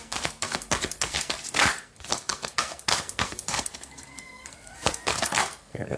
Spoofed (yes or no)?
yes